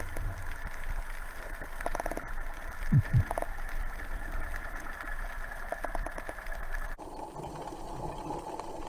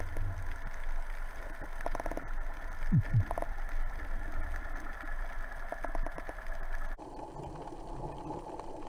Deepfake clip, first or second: first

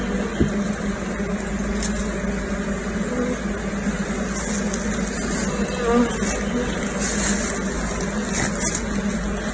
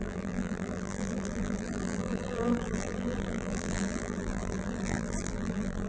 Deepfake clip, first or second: second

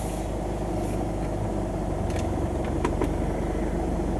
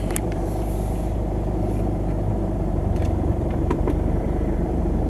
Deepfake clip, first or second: second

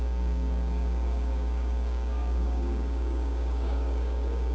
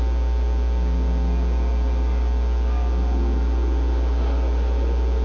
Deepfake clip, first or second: first